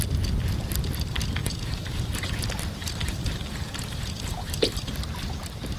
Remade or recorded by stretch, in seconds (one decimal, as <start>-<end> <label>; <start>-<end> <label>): 0.0-1.4 recorded; 1.4-2.3 remade; 2.3-2.8 recorded; 2.8-4.9 remade; 4.9-5.8 recorded